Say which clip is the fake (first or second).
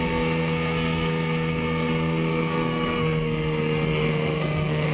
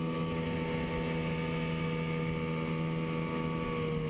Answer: first